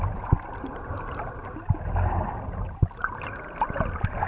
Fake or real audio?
real